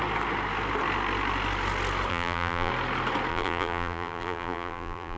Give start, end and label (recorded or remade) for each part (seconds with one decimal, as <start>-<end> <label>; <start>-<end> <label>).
0.0-2.1 recorded; 2.1-2.7 remade; 2.7-3.3 recorded; 3.3-5.2 remade